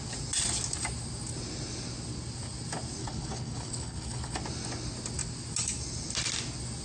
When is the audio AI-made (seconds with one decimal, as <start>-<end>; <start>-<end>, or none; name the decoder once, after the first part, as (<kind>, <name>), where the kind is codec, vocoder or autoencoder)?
3.0-4.4 (codec, HILCodec)